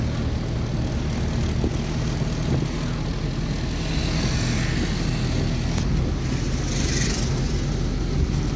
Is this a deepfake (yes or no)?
no